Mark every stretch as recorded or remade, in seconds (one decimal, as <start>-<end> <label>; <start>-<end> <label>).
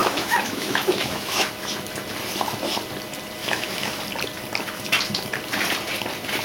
0.0-1.5 remade; 1.5-3.4 recorded; 3.4-4.0 remade; 4.0-6.4 recorded